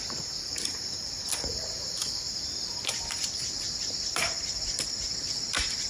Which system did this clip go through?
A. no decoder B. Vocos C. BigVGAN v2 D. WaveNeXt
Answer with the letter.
C